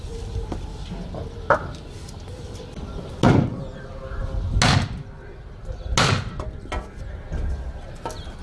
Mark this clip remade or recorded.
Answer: recorded